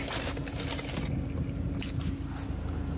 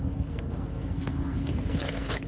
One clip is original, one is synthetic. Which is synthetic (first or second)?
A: second